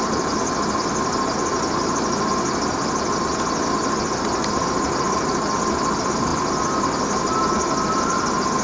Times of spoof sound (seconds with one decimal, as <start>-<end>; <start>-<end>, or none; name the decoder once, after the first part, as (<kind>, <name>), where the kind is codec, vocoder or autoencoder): none

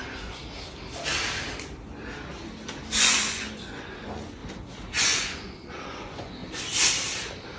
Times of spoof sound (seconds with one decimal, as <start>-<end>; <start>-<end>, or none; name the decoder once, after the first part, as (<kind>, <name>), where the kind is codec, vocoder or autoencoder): 0.0-0.4 (vocoder, Vocos); 3.0-4.4; 5.0-6.4

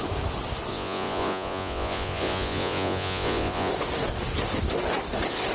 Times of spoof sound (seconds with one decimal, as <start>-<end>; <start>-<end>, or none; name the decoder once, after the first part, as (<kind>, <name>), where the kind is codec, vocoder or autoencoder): 0.7-3.7 (vocoder, Vocos)

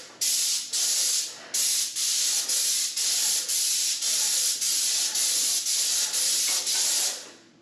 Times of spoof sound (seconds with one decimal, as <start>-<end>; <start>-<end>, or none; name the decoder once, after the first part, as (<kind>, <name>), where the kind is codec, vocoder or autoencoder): none